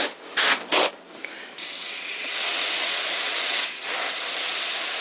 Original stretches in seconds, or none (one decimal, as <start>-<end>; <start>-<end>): 0.0-1.6; 4.6-5.0